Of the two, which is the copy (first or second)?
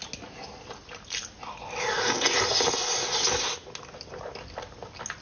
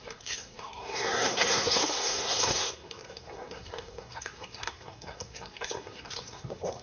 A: second